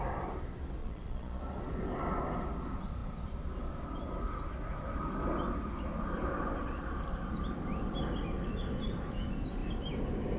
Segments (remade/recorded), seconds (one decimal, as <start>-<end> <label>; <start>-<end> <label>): 0.0-0.8 recorded; 0.8-1.4 remade; 1.4-10.4 recorded